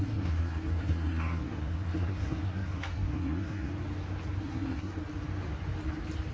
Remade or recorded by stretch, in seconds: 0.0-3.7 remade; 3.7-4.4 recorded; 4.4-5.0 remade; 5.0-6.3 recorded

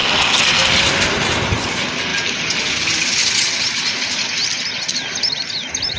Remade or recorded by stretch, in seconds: 0.0-0.7 remade; 0.7-6.0 recorded